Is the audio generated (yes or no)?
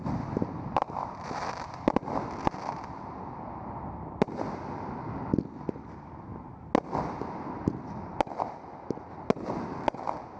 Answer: no